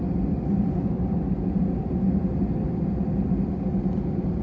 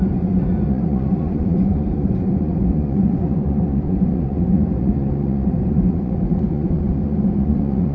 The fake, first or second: second